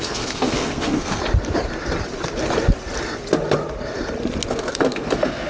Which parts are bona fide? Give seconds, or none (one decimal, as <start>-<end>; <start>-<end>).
1.2-4.5